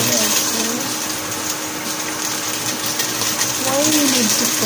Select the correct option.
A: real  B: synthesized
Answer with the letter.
A